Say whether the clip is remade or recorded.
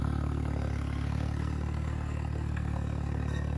remade